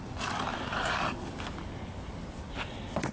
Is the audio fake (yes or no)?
yes